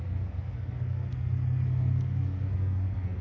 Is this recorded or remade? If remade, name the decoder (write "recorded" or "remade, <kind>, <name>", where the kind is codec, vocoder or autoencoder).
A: remade, codec, SNAC